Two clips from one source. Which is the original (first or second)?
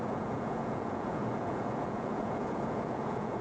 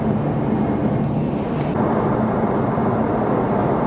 second